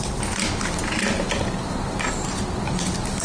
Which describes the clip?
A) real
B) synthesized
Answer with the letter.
A